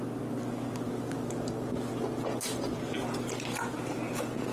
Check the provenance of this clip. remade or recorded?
recorded